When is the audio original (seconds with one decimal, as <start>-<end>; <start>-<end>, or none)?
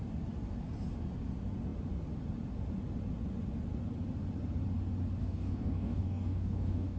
0.0-5.2